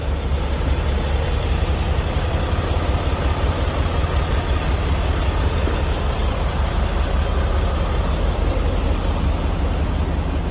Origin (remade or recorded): recorded